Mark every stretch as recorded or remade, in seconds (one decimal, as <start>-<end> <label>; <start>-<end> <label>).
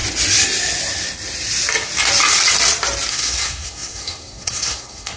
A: 0.0-3.1 recorded; 3.1-5.2 remade